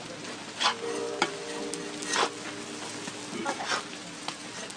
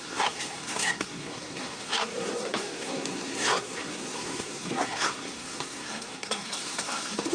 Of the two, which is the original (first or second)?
first